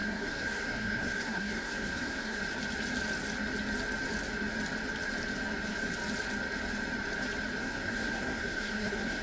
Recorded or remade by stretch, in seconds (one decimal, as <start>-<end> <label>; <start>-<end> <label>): 0.0-2.4 remade; 2.4-7.6 recorded; 7.6-9.2 remade